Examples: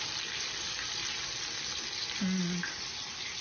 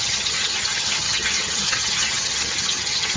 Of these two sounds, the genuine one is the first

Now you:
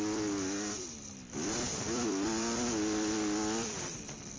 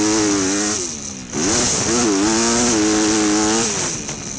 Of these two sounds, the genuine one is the second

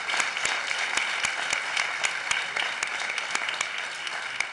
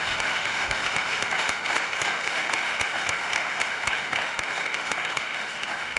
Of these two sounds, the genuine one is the first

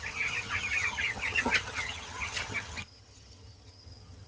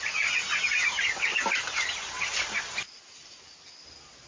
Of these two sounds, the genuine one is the second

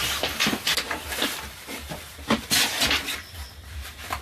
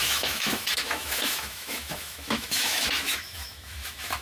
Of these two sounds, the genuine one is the first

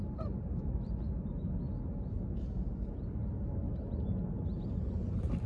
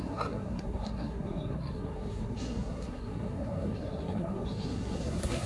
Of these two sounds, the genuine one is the first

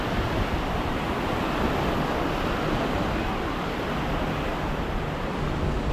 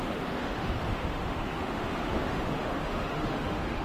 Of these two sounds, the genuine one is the first